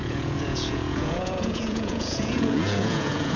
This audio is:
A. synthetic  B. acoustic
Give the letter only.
A